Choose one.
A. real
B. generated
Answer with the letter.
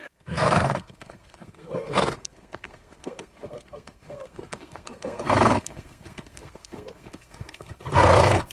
B